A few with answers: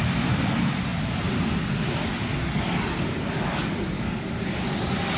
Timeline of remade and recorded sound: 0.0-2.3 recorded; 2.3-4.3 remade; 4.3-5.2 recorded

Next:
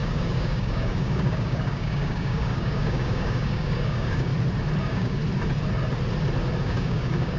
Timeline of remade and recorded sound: 0.0-4.3 remade; 4.3-4.8 recorded; 4.8-5.2 remade; 5.2-6.6 recorded; 6.6-7.4 remade

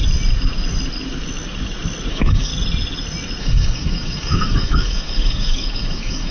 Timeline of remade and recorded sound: 0.0-2.1 recorded; 2.1-2.5 remade; 2.5-3.4 recorded; 3.4-6.3 remade

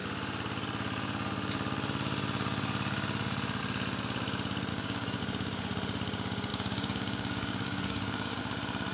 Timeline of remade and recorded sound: 0.0-4.7 recorded; 4.7-5.2 remade; 5.2-6.5 recorded; 6.5-8.4 remade; 8.4-8.9 recorded

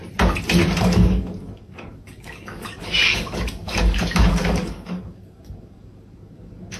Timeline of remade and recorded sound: 0.0-0.8 recorded; 0.8-6.8 remade

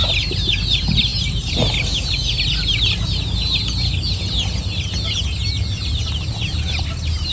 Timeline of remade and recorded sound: 0.0-7.3 recorded